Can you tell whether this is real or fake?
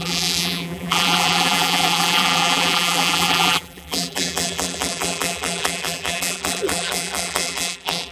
fake